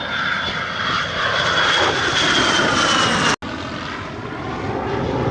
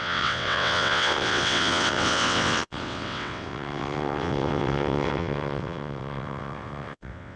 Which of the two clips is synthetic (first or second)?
second